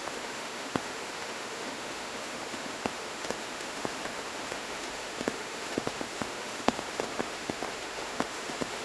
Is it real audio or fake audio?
fake